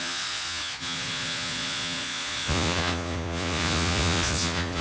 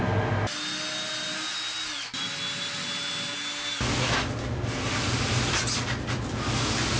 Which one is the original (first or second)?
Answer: second